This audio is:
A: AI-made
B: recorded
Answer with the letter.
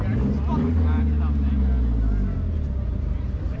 B